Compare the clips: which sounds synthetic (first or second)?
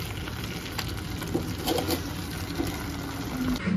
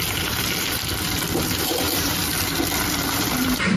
second